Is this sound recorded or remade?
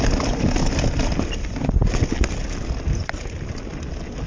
recorded